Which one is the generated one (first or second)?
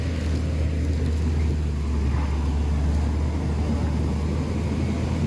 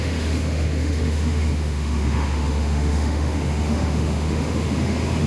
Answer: second